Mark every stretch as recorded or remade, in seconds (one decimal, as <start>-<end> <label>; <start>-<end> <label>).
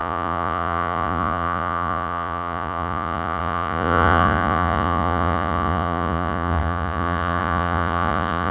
0.0-8.5 remade